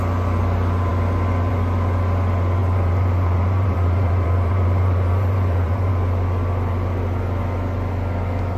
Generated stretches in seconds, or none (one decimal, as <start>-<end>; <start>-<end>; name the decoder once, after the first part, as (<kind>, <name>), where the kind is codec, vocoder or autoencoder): 2.6-5.9 (vocoder, BigVGAN v2)